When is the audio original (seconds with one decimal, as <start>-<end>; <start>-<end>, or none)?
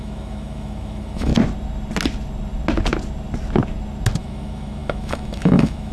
1.3-4.2